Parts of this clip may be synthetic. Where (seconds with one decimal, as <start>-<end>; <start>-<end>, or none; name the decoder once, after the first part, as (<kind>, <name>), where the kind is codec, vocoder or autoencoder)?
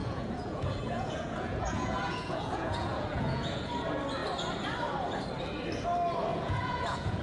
0.0-3.7 (vocoder, Vocos); 6.3-7.2